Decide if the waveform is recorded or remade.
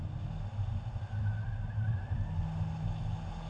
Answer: recorded